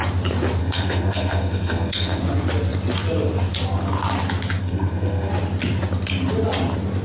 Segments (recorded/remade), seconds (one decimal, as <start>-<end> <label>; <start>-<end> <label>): 0.0-0.6 recorded; 0.6-2.2 remade; 2.2-4.6 recorded; 4.6-5.3 remade; 5.3-7.0 recorded